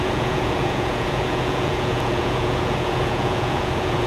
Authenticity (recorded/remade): remade